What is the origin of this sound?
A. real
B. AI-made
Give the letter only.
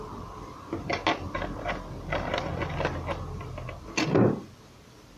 A